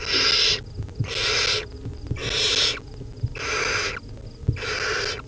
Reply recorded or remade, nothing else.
recorded